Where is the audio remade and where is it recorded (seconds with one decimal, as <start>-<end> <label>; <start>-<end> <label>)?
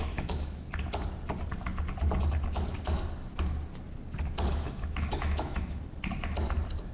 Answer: 0.0-0.7 remade; 0.7-4.5 recorded; 4.5-5.8 remade; 5.8-6.9 recorded